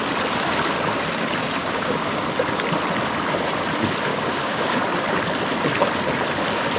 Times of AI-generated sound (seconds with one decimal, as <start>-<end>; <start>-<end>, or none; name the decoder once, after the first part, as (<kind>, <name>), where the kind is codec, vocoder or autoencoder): 1.6-2.2 (codec, DAC); 4.1-4.8